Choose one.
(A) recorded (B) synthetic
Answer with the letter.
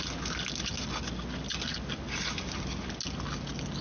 A